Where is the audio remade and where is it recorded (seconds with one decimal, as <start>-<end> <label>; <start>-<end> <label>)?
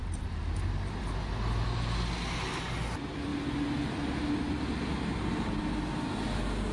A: 0.0-6.7 recorded